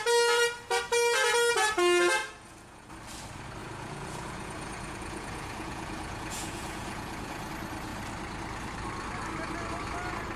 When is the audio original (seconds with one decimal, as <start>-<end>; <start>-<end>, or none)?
0.0-2.2; 2.9-3.6; 7.5-10.4